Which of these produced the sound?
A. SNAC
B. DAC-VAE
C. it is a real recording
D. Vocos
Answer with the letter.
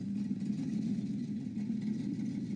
C